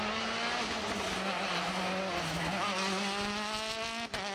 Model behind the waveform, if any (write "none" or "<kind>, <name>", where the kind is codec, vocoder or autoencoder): none